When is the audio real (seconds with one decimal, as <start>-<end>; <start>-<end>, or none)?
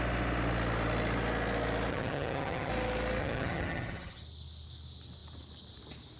0.0-1.9; 2.7-3.2; 4.2-6.2